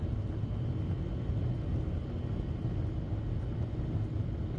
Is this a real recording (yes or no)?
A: yes